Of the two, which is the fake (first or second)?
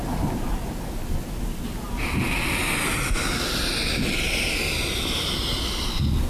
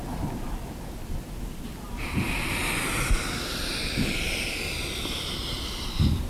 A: second